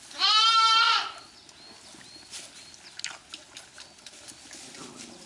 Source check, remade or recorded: recorded